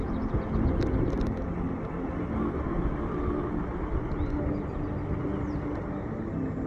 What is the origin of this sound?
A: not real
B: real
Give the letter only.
B